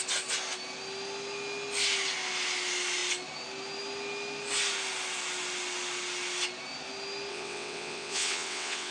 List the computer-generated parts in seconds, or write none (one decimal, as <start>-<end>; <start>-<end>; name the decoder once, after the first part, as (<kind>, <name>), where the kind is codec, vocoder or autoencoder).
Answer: 7.3-8.9 (vocoder, WaveNeXt)